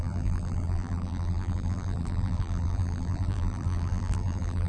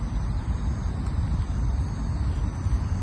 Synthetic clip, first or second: first